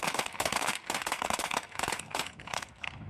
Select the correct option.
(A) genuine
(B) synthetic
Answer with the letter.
B